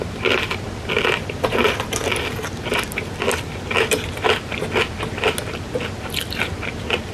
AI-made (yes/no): no